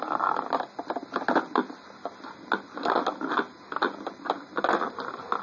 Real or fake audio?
real